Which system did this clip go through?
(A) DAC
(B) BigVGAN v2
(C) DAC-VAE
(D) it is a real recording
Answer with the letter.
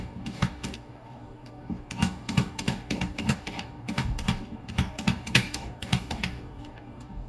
A